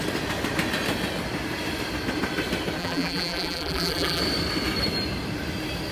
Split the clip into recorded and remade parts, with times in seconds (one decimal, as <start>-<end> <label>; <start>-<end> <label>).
0.0-2.8 recorded; 2.8-4.2 remade; 4.2-5.9 recorded